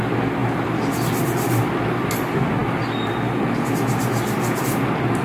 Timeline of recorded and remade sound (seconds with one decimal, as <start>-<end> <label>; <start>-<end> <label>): 0.0-5.2 recorded

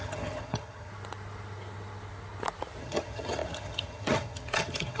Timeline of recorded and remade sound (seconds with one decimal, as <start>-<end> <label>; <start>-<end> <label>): 0.0-0.9 remade; 0.9-2.8 recorded; 2.8-5.0 remade

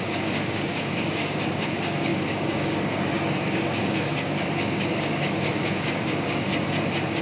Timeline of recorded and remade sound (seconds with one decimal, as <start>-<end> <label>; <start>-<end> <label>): 0.0-6.5 remade; 6.5-7.2 recorded

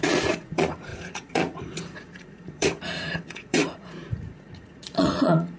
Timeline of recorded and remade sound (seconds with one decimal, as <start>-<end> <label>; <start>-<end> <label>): 0.0-5.6 remade

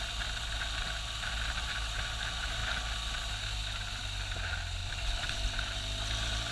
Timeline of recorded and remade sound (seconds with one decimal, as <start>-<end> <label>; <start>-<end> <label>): 0.0-4.8 recorded; 4.8-6.5 remade

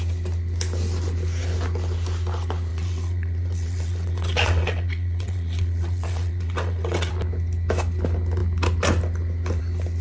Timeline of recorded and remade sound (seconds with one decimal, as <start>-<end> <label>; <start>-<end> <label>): 0.0-2.7 recorded; 2.7-7.1 remade; 7.1-10.0 recorded

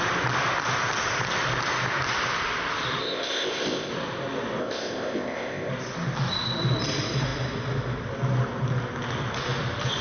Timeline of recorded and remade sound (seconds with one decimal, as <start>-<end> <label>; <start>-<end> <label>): 0.0-3.0 recorded; 3.0-3.9 remade; 3.9-4.6 recorded; 4.6-5.7 remade; 5.7-10.0 recorded

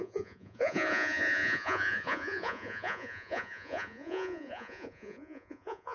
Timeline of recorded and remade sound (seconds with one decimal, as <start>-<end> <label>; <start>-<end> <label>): 0.0-5.9 remade